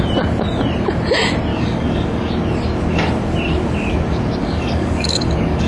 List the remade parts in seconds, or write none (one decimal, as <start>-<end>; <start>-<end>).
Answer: 1.5-2.3; 4.4-5.7

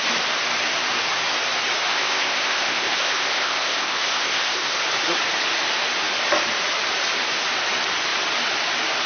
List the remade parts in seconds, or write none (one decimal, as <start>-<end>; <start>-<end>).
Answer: 1.9-4.8

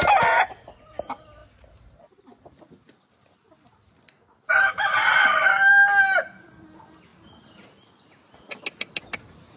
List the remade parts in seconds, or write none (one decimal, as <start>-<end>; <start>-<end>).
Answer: none

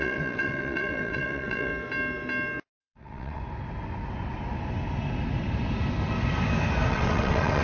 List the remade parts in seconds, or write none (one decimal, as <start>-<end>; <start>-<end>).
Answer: 0.0-1.7; 2.8-3.4; 6.9-7.6

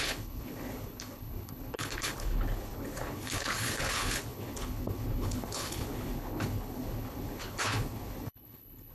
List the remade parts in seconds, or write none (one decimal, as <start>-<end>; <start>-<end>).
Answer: 0.0-8.9